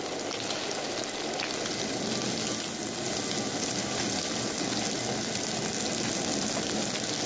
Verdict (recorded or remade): recorded